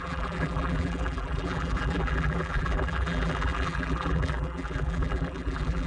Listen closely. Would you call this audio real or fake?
fake